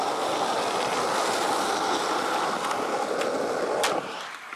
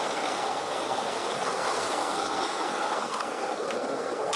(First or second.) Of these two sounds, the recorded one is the first